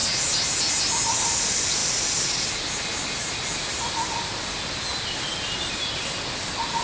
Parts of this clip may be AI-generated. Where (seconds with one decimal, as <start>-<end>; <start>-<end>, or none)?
none